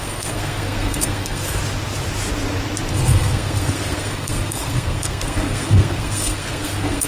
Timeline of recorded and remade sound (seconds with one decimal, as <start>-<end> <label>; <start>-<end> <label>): 0.0-1.6 remade; 1.6-2.9 recorded; 2.9-7.1 remade